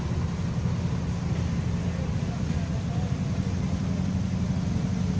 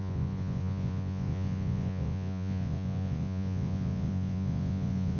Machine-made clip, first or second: second